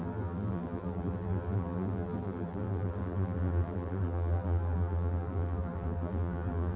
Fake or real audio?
fake